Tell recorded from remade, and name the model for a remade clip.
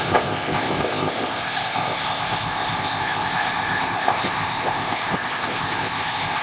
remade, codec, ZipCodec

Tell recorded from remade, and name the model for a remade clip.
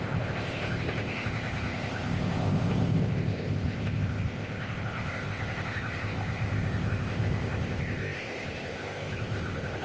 remade, codec, ZipCodec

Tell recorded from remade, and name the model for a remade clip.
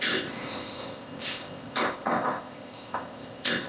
remade, codec, ZipCodec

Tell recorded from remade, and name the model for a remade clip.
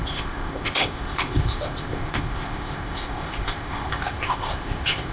remade, codec, ZipCodec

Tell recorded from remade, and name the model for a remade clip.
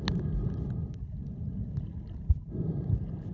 recorded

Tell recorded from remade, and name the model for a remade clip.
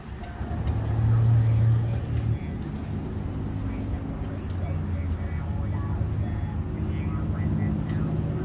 recorded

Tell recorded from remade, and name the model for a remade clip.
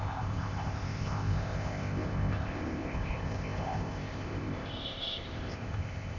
remade, codec, ZipCodec